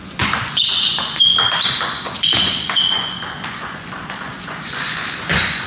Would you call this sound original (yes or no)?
no